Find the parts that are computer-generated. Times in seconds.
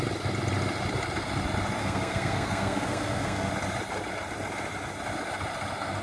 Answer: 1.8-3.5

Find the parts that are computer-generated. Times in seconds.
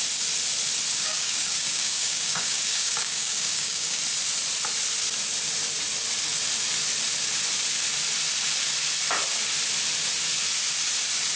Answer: 0.9-4.0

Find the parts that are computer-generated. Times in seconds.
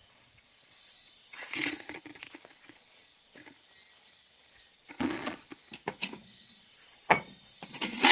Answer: 0.0-3.4; 4.5-5.6; 6.5-8.1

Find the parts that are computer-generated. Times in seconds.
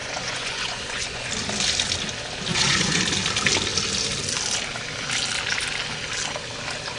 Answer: 0.0-1.3; 2.5-3.0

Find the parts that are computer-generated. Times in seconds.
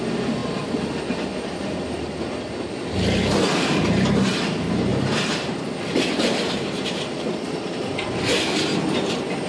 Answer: 4.9-8.2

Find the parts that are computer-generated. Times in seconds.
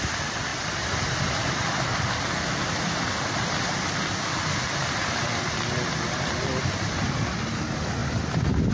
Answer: 0.0-8.0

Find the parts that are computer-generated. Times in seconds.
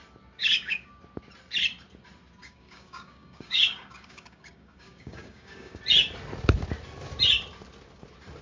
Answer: 0.4-0.9; 2.4-5.8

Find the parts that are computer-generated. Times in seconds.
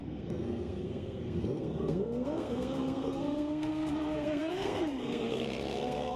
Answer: 0.0-6.2